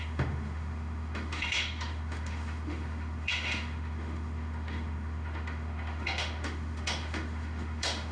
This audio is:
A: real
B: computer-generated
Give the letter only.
B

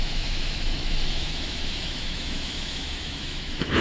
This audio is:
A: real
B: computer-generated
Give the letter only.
B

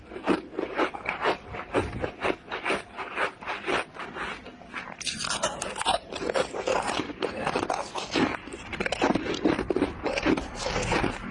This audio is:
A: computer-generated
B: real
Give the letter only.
B